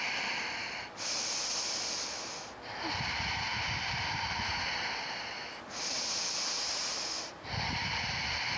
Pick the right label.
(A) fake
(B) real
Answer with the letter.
B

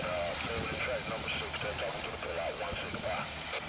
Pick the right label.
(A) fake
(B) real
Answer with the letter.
B